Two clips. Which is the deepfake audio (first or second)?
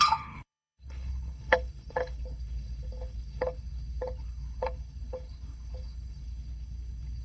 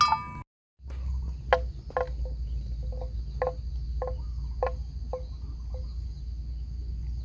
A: first